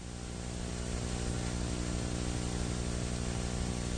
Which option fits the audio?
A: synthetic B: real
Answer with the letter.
B